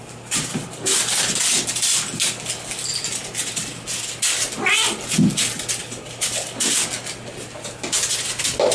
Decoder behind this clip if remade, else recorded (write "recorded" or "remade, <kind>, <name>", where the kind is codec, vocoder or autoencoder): recorded